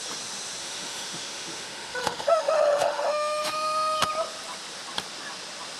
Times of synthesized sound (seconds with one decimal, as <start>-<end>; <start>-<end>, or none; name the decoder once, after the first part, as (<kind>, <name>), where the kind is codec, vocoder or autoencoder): 0.6-4.1 (autoencoder, DAC-VAE)